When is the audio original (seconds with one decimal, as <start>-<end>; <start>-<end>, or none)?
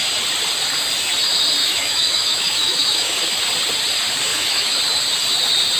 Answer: 0.0-1.6; 3.4-4.3; 4.8-5.8